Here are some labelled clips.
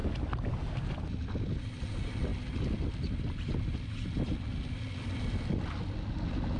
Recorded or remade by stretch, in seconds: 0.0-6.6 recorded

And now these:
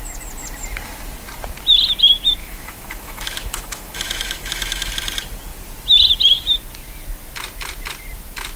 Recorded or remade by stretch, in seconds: 0.0-2.4 recorded; 2.4-4.9 remade; 4.9-8.6 recorded

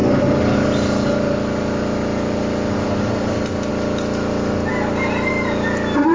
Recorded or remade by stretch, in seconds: 0.0-6.1 recorded

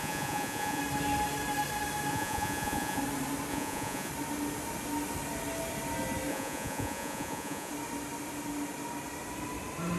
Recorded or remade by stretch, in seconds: 0.0-0.8 remade; 0.8-2.1 recorded; 2.1-3.0 remade; 3.0-3.5 recorded; 3.5-4.1 remade; 4.1-6.3 recorded; 6.3-7.7 remade; 7.7-10.0 recorded